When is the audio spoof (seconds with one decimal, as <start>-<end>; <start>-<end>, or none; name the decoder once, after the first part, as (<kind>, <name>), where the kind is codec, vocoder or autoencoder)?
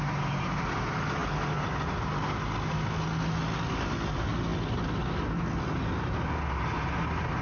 none